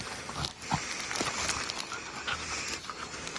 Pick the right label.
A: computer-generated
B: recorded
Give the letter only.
B